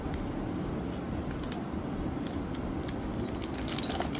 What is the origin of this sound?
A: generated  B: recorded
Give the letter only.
B